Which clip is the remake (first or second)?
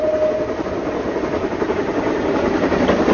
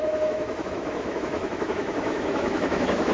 second